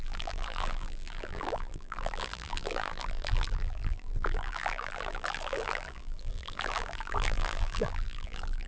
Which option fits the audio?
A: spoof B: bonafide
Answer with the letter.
A